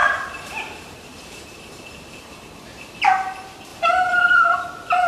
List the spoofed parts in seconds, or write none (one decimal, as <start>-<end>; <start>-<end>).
0.0-3.1; 3.7-4.3